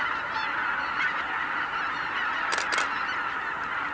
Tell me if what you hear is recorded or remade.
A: recorded